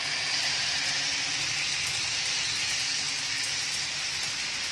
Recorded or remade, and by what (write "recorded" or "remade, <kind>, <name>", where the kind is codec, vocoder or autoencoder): recorded